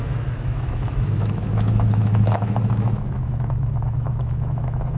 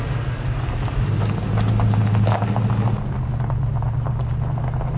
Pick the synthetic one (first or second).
first